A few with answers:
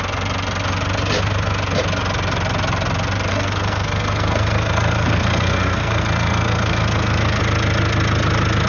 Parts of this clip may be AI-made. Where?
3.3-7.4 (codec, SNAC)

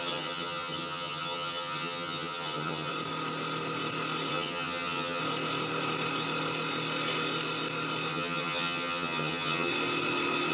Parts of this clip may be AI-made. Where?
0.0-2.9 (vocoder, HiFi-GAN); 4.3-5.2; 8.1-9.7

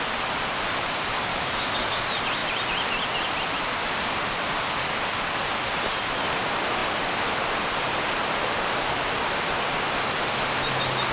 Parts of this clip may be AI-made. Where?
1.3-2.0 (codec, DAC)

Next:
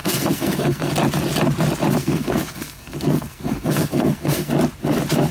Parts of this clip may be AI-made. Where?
0.0-0.9 (codec, SNAC); 2.0-4.5

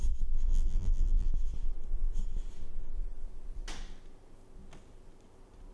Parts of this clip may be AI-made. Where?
0.5-1.3 (vocoder, BigVGAN v2)

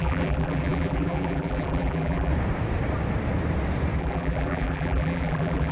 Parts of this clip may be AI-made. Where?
0.0-2.3 (vocoder, BigVGAN v2); 4.0-5.7